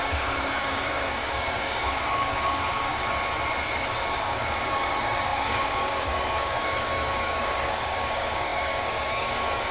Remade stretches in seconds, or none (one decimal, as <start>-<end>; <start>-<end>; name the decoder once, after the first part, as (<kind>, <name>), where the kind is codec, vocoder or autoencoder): 0.0-3.0 (codec, DAC); 4.1-9.7